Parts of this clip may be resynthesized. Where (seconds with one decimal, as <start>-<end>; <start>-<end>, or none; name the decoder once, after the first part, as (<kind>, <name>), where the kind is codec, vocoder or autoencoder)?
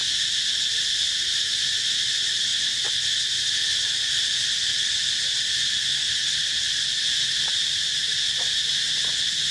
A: none